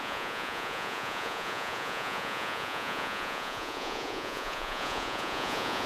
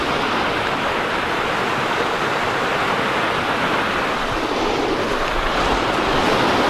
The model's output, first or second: first